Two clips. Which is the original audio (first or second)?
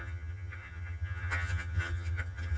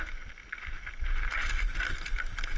second